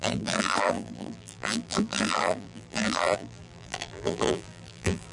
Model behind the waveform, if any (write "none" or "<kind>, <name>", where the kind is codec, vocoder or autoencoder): vocoder, BigVGAN v2